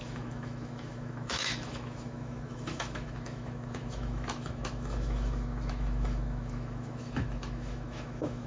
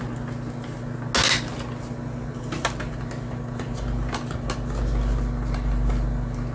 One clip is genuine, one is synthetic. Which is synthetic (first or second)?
first